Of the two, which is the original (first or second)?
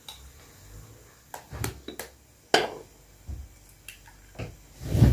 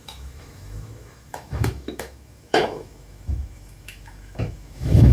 first